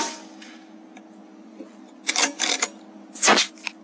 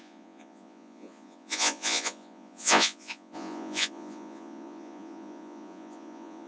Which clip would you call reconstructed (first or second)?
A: second